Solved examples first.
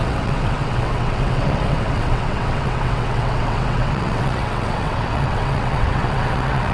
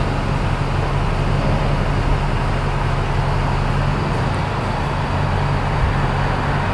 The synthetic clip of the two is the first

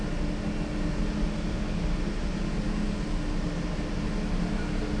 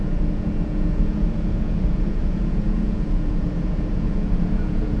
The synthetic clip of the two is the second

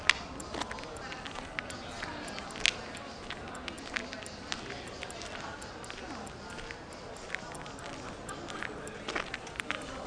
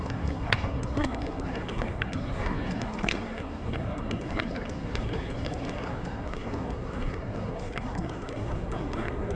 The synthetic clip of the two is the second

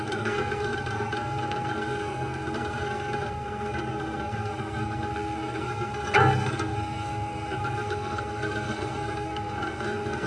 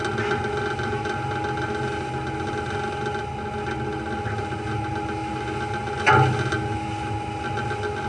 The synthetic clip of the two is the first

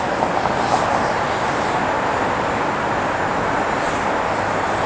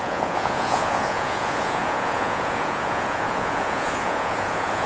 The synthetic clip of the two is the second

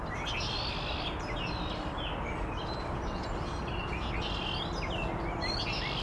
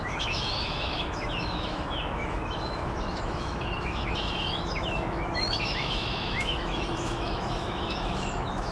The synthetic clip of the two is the second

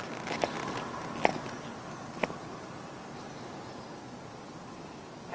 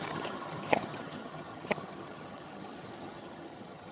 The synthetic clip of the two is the second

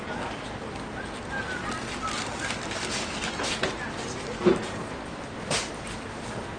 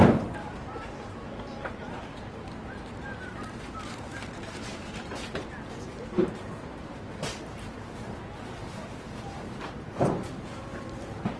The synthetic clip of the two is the second